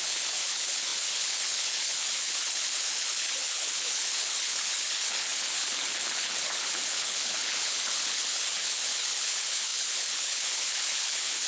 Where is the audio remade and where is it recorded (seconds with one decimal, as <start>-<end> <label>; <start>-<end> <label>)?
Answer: 0.0-11.5 remade